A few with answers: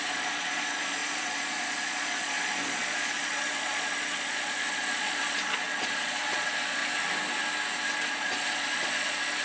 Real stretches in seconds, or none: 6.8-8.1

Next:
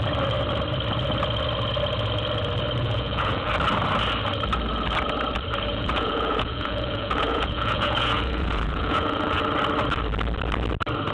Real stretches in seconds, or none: 0.0-2.8; 3.5-5.7; 9.4-11.1

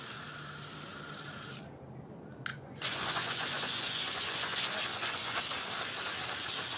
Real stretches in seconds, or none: 0.0-2.5; 5.4-6.8

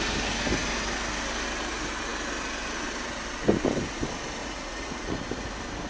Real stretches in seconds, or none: 0.0-4.4; 5.5-5.9

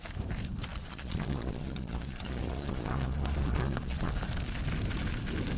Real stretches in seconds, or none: 0.0-0.7; 4.1-5.6

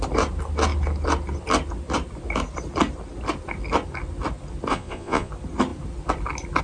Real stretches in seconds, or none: 0.0-4.7; 5.3-6.6